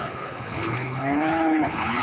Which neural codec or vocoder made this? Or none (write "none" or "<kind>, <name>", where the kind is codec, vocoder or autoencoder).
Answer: codec, HILCodec